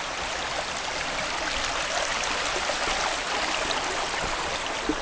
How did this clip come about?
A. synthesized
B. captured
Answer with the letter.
B